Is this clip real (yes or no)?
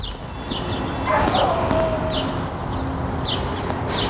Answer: yes